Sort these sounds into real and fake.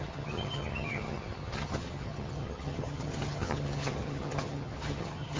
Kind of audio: fake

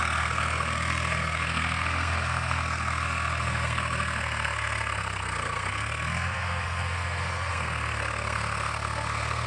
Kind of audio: fake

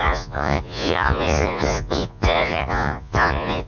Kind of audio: fake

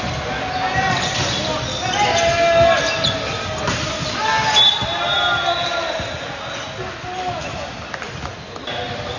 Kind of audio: real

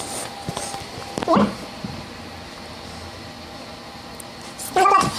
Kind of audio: real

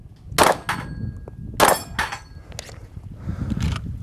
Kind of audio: real